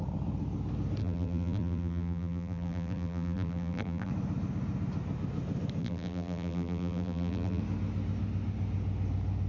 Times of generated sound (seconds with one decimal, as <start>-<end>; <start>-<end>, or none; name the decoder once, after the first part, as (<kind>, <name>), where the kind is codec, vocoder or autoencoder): 1.0-4.1 (vocoder, BigVGAN v2); 5.8-7.6